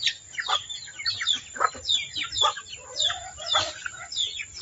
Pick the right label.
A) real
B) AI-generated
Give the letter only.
A